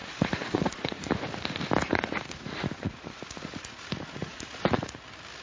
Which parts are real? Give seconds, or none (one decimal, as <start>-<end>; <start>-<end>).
1.1-1.8; 5.0-5.4

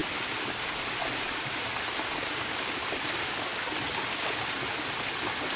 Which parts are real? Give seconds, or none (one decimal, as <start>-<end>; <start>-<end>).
0.0-5.6

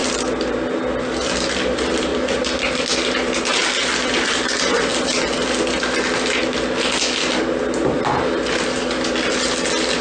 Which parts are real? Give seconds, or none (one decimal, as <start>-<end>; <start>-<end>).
0.0-10.0

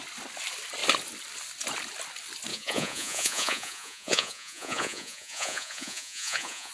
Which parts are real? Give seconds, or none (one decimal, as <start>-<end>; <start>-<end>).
0.0-2.5

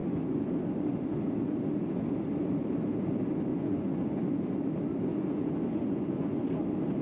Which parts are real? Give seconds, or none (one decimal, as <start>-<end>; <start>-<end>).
0.5-3.5; 4.3-5.1; 6.5-7.0